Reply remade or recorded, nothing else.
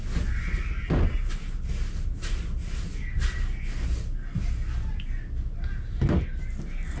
recorded